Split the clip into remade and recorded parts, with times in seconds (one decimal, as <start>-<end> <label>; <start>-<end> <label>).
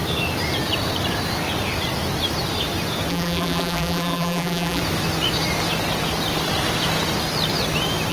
0.0-3.1 recorded; 3.1-4.8 remade; 4.8-8.1 recorded